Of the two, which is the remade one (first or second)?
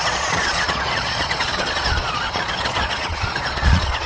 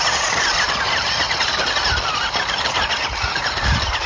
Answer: first